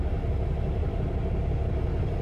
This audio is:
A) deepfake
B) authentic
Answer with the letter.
B